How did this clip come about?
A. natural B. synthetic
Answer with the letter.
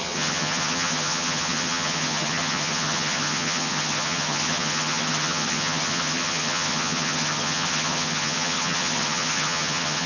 B